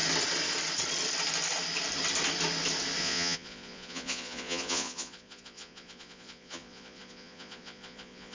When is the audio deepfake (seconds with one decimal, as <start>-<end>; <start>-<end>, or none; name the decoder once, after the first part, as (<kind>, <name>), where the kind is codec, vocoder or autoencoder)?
3.0-8.3 (vocoder, Vocos)